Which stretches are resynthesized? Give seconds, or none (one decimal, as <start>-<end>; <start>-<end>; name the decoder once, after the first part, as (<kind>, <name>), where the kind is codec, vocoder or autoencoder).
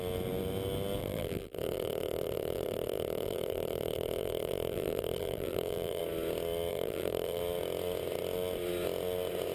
1.0-6.0 (vocoder, BigVGAN v2); 6.7-7.4